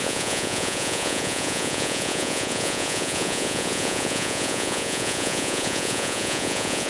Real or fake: fake